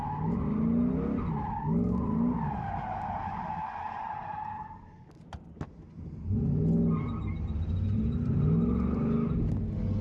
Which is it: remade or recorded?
recorded